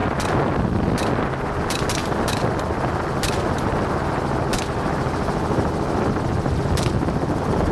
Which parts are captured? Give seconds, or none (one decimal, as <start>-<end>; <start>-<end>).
0.0-7.7